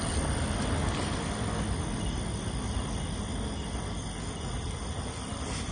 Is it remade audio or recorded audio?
recorded